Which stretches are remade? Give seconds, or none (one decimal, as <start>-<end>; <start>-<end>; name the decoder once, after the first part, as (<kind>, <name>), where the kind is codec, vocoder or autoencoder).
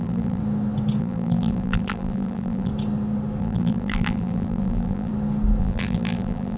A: 0.0-0.4 (vocoder, BigVGAN v2); 1.0-2.7; 3.4-5.1; 5.6-6.6